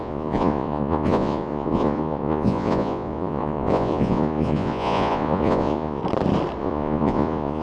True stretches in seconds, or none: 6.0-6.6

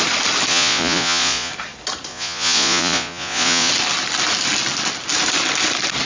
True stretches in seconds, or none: 0.0-0.5; 1.5-2.1; 3.7-6.1

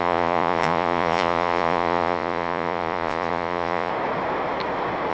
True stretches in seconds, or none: 3.9-5.1

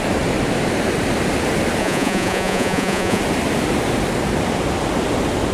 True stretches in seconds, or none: 0.0-1.8; 3.2-5.5

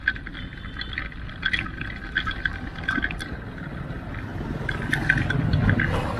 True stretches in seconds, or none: 0.0-6.2

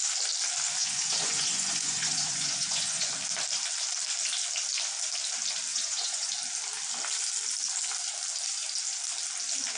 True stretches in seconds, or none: 0.0-0.8; 3.1-5.7; 6.3-9.8